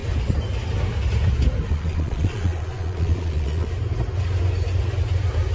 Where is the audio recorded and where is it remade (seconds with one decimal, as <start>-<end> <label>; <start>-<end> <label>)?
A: 0.0-1.7 recorded; 1.7-3.7 remade; 3.7-5.5 recorded